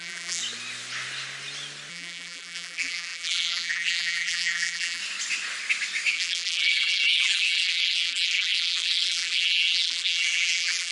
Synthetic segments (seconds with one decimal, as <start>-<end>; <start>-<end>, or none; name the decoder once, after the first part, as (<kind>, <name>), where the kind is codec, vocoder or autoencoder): 0.0-0.4 (vocoder, BigVGAN v2); 1.9-5.0; 6.1-10.9